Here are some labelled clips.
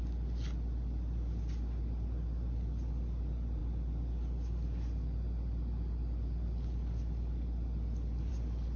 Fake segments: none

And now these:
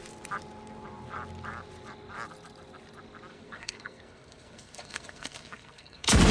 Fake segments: 3.3-6.3 (codec, SNAC)

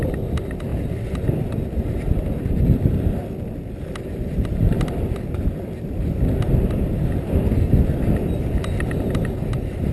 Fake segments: none

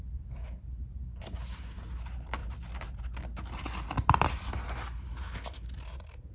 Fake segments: none

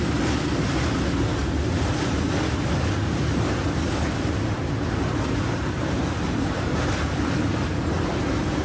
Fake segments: none

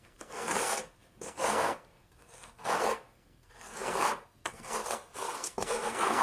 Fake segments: 0.0-6.2 (codec, SNAC)